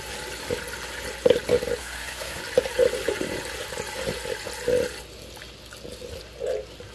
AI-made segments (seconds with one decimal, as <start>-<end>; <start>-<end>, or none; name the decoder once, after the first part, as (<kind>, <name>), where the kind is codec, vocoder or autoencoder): 1.8-2.4 (codec, SNAC)